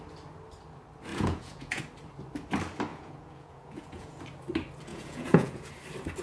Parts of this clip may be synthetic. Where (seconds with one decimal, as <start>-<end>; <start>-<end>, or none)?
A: 1.1-1.8; 2.9-4.2; 4.9-5.7